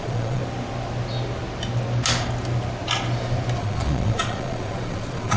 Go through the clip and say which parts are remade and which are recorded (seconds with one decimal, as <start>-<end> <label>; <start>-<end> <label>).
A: 0.0-0.4 remade; 0.4-3.6 recorded; 3.6-5.4 remade